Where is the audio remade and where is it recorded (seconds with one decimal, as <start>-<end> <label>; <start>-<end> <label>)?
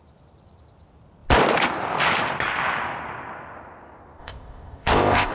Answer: 0.0-4.2 recorded; 4.2-5.3 remade